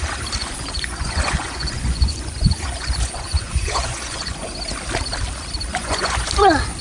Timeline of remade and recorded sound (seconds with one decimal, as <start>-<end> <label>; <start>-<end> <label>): 0.0-0.4 recorded; 0.4-4.5 remade; 4.5-5.7 recorded; 5.7-6.3 remade; 6.3-6.8 recorded